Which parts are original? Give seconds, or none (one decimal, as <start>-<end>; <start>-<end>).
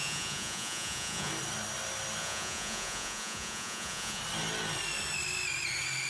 1.3-2.2; 4.2-6.1